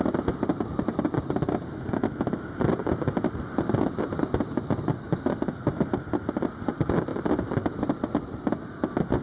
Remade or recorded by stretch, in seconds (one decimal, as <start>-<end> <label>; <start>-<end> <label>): 0.0-9.2 recorded